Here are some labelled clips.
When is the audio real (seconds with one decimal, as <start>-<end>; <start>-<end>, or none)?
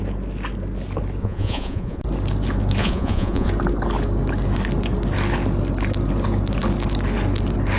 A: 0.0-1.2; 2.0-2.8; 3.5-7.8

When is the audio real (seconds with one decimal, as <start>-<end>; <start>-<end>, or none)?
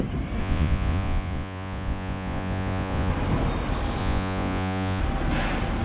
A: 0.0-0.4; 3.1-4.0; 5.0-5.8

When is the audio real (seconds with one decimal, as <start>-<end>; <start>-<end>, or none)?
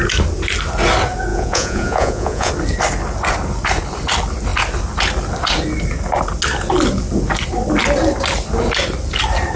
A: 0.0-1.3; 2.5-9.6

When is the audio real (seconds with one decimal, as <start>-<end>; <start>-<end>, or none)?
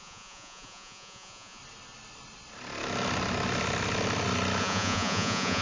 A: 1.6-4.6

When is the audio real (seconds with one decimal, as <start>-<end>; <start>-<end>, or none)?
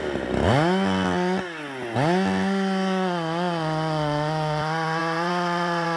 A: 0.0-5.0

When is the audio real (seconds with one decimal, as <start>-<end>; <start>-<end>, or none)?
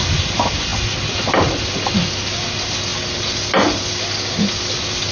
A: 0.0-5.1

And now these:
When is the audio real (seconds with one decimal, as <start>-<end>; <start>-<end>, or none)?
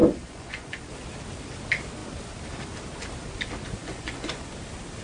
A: 0.9-3.8; 4.5-5.0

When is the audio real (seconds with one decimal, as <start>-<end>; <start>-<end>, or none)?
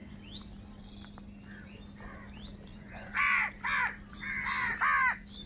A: 0.0-2.7; 3.4-5.5